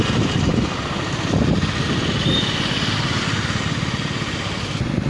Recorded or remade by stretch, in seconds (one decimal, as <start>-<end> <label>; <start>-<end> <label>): 0.0-5.1 recorded